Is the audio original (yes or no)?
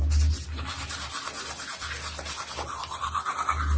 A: yes